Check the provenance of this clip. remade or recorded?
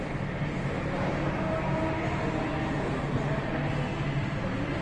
recorded